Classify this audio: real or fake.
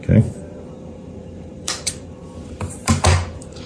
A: fake